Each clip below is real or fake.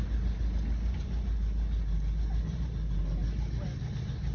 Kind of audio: real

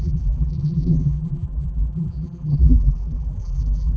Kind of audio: fake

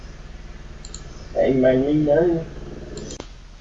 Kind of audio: real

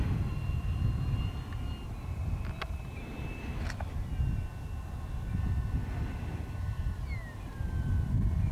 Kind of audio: real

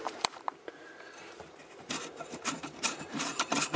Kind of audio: fake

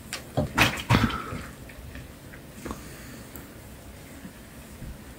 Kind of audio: real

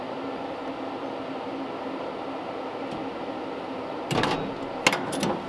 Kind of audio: real